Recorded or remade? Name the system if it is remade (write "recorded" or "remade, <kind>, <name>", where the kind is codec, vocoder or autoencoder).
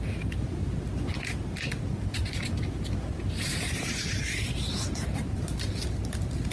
recorded